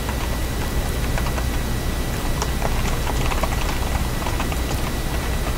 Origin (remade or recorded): recorded